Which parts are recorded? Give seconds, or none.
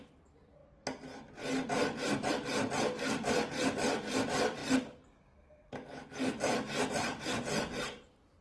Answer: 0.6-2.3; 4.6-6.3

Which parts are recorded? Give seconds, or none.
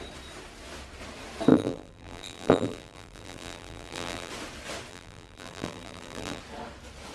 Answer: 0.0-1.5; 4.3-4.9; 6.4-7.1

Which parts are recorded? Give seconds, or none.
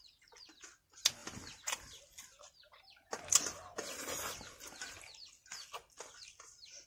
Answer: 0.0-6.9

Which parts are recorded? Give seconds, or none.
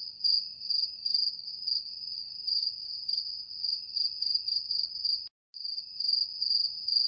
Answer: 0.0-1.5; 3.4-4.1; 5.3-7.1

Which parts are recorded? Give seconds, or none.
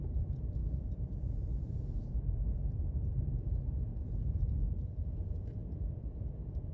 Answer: none